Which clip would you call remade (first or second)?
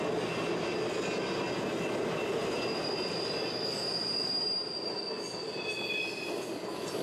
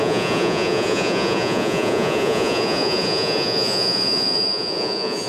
second